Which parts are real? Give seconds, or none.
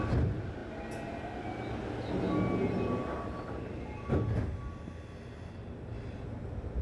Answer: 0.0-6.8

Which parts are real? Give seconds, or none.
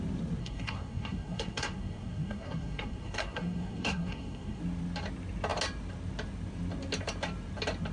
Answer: 0.0-0.4; 4.6-7.9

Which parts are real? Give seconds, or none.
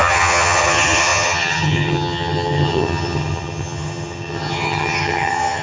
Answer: none